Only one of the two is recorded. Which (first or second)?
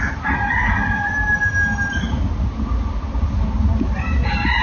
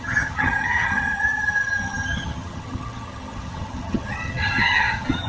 first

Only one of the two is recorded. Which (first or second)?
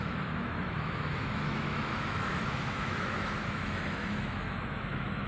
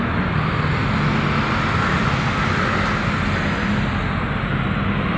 second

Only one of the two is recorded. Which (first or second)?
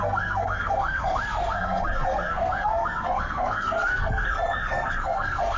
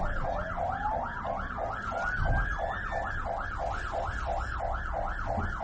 second